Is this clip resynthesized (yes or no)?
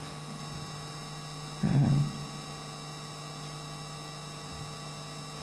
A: no